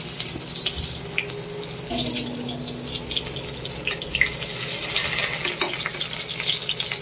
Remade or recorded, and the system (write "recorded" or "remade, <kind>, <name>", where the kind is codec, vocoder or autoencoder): recorded